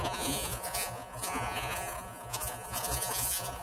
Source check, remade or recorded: remade